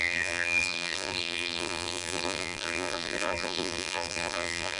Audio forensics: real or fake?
fake